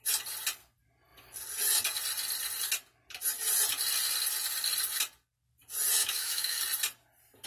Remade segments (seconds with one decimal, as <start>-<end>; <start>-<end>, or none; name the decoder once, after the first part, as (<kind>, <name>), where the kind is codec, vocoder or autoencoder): 6.0-6.6 (autoencoder, DAC-VAE)